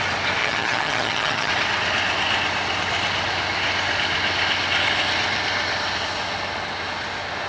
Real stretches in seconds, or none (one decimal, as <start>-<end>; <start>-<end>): 0.0-0.4; 1.5-7.5